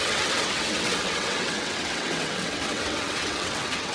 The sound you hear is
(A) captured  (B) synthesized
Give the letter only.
B